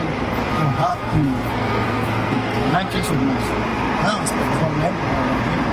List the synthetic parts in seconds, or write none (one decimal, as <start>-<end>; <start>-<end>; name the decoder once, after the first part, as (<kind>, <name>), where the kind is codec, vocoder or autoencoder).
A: 0.9-3.1 (codec, SNAC)